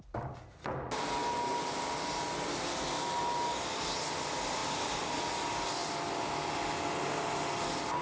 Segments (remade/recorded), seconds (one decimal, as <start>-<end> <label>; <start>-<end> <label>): 0.0-8.0 recorded